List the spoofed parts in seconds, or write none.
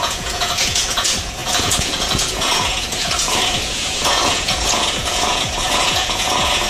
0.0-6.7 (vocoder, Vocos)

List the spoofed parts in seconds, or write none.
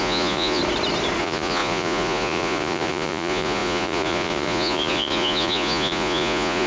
0.0-0.6 (vocoder, Vocos); 1.2-6.7